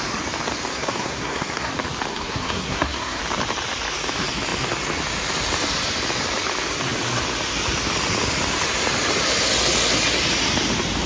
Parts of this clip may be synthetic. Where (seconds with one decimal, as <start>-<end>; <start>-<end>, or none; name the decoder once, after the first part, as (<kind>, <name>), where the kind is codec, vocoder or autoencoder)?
0.7-1.7 (codec, SNAC); 2.1-3.2